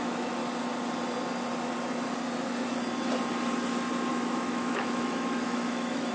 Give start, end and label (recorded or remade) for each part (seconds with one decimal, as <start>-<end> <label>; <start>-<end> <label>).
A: 0.0-0.4 remade; 0.4-4.1 recorded; 4.1-6.1 remade